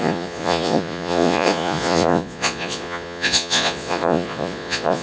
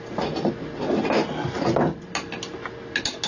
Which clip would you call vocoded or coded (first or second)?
first